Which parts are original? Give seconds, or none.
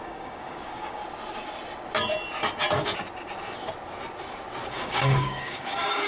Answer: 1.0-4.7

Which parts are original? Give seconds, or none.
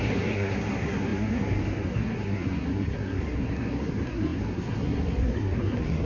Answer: none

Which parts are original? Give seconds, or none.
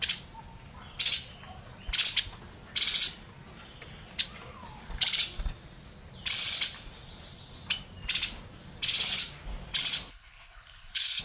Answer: 0.0-10.1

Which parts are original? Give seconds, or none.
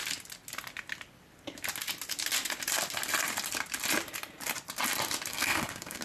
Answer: 0.0-5.3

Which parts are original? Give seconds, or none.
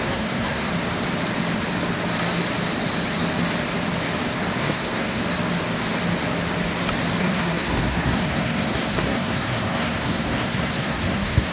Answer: 0.7-4.6; 5.2-7.2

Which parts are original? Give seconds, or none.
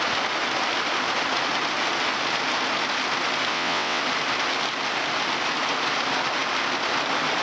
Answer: 0.0-3.5; 4.0-7.4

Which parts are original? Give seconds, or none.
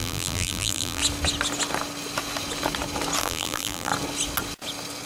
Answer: 1.0-3.2; 3.9-5.1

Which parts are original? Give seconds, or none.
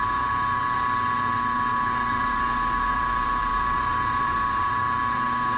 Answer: 0.0-3.5; 4.7-5.6